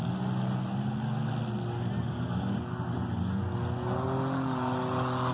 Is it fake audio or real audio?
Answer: real